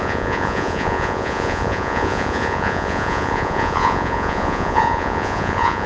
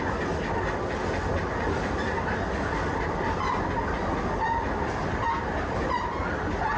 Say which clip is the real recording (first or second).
second